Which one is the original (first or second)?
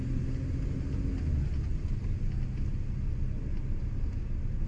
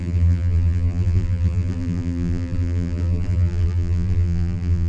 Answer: first